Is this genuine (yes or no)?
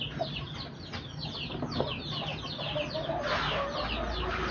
yes